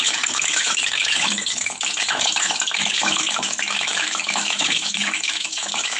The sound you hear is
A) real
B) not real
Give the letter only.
B